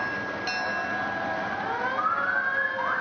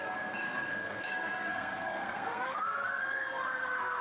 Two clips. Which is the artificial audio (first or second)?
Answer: second